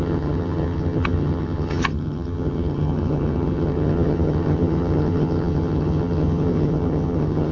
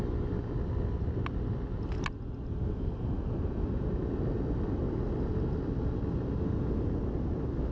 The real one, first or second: second